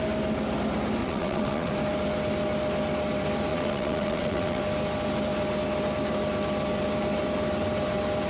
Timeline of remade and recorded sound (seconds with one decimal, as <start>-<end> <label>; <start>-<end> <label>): 0.0-1.0 recorded; 1.0-1.7 remade; 1.7-3.5 recorded; 3.5-4.6 remade; 4.6-8.3 recorded